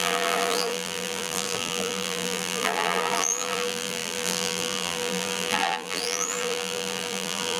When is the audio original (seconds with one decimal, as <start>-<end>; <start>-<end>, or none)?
none

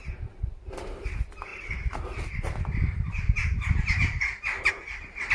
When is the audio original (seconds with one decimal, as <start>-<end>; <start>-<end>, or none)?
0.0-5.3

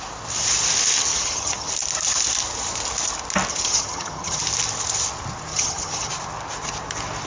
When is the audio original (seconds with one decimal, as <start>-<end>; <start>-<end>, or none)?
0.0-1.1; 1.7-3.5; 4.4-5.5; 6.1-7.3

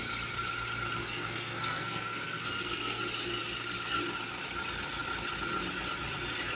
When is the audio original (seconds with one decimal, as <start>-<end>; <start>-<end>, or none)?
0.0-1.0; 3.0-6.5

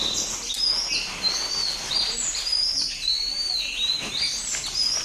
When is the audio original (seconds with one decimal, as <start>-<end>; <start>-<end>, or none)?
0.0-1.9

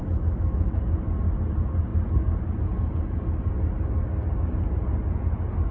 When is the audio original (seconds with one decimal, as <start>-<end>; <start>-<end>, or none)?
0.8-5.7

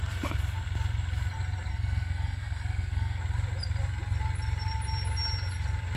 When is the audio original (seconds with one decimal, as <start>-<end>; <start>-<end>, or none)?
0.0-1.7; 3.2-6.0